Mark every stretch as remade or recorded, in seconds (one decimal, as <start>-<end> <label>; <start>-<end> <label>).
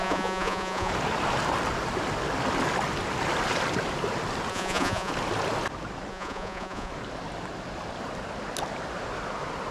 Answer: 0.0-0.9 remade; 0.9-4.5 recorded; 4.5-5.1 remade; 5.1-6.1 recorded; 6.1-6.9 remade; 6.9-9.7 recorded